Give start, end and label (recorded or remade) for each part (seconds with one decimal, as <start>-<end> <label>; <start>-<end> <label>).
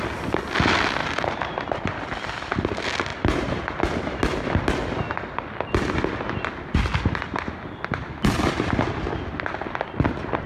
0.0-1.0 recorded; 1.0-2.0 remade; 2.0-3.1 recorded; 3.1-3.8 remade; 3.8-10.5 recorded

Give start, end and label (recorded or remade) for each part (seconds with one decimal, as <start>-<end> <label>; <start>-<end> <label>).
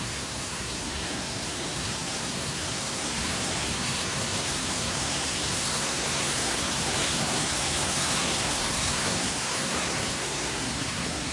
0.0-11.3 remade